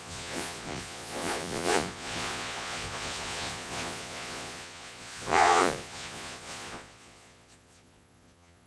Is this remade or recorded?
remade